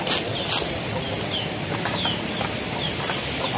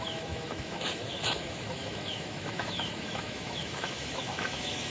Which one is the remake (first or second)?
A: second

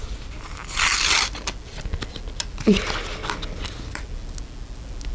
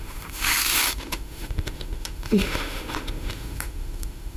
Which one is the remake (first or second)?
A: second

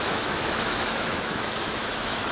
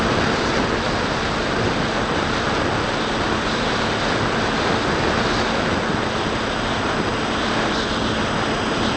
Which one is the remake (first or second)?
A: first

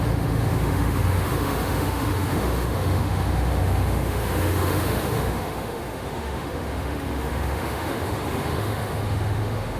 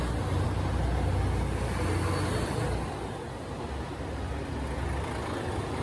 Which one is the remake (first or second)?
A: first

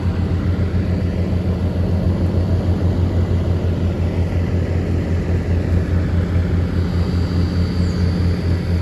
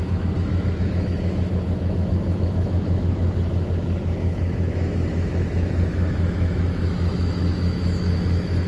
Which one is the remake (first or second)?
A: second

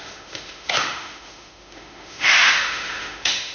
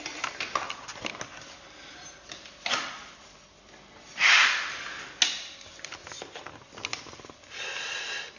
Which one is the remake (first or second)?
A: first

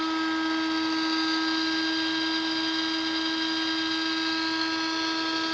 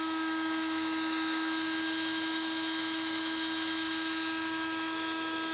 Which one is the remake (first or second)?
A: second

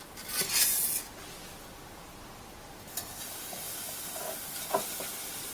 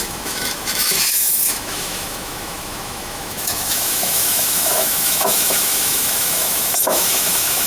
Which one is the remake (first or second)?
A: second